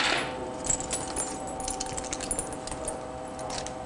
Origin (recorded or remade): recorded